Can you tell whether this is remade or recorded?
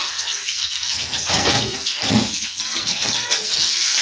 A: remade